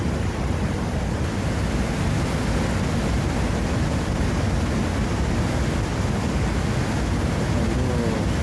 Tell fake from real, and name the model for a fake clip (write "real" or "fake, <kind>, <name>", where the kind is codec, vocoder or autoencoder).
real